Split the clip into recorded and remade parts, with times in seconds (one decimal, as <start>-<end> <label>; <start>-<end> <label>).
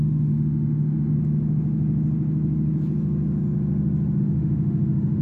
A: 0.0-1.1 remade; 1.1-4.2 recorded; 4.2-5.2 remade